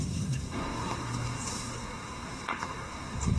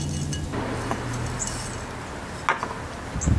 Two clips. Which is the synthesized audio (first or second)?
first